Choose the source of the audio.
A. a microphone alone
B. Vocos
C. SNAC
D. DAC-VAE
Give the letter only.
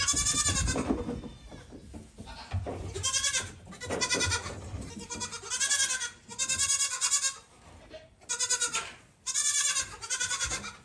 A